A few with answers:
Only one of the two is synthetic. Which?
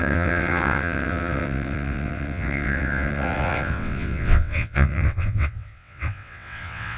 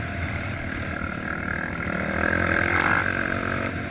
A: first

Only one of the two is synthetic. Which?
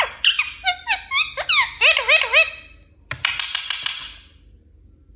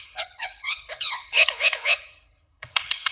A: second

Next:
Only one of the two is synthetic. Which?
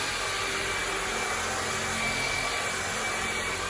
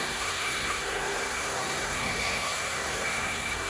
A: second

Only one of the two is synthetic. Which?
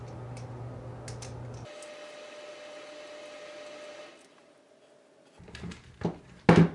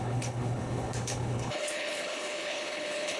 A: second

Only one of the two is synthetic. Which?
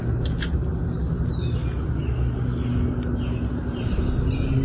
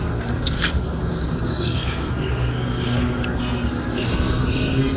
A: second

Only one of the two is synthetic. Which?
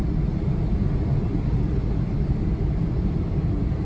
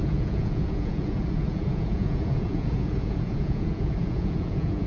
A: second